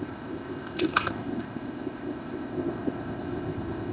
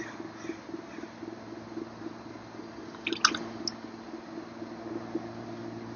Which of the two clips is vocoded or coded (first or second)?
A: first